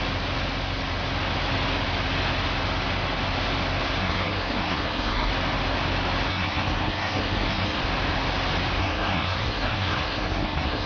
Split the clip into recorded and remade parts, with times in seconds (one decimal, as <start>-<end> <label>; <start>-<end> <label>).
0.0-4.0 recorded; 4.0-5.3 remade; 5.3-6.3 recorded; 6.3-7.8 remade; 7.8-8.8 recorded; 8.8-10.9 remade